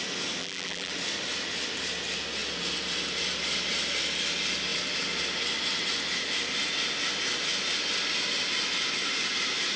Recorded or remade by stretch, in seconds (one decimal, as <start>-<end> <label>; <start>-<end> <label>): 0.0-0.4 recorded; 0.4-0.9 remade; 0.9-9.8 recorded